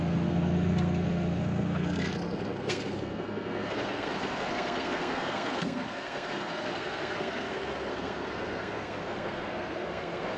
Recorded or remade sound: remade